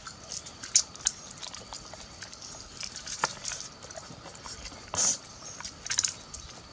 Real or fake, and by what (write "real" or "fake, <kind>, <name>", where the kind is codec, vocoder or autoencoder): real